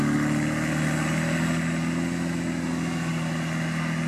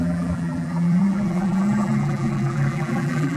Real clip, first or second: first